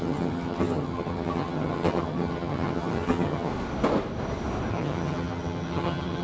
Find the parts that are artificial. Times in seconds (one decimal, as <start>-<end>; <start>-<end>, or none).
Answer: 0.0-3.5; 4.7-6.2